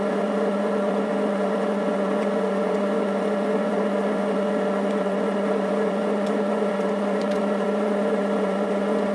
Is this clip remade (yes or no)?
yes